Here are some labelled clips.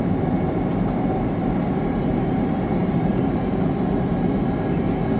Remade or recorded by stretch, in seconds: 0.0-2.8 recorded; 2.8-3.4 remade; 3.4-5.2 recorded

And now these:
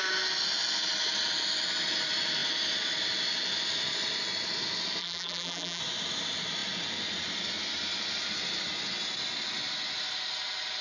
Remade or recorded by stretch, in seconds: 0.0-5.0 recorded; 5.0-5.8 remade; 5.8-10.8 recorded

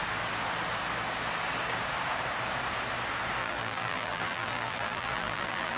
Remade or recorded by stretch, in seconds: 0.0-3.4 recorded; 3.4-5.8 remade

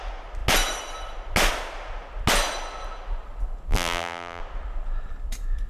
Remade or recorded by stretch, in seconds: 0.0-3.7 recorded; 3.7-4.4 remade; 4.4-5.7 recorded